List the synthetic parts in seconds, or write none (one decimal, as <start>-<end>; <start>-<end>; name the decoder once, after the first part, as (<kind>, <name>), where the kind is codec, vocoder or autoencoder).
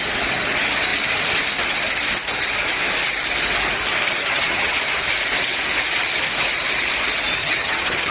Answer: 4.2-4.7 (vocoder, HiFi-GAN); 7.4-8.1